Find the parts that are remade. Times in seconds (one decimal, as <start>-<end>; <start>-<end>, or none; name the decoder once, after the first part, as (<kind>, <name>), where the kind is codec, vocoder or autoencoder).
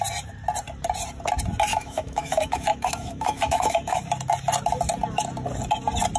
1.7-4.0 (autoencoder, DAC-VAE)